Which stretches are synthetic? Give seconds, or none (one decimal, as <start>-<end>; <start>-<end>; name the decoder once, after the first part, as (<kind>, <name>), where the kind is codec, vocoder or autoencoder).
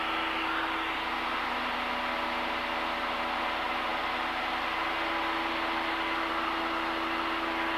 3.9-6.2 (vocoder, BigVGAN v2)